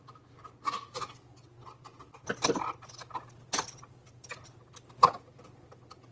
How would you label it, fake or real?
real